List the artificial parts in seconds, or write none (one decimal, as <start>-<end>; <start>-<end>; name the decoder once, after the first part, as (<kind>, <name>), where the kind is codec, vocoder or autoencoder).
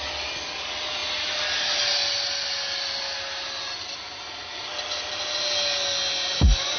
none